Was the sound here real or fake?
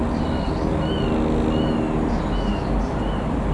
real